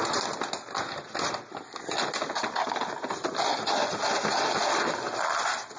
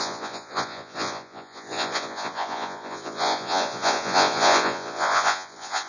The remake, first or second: second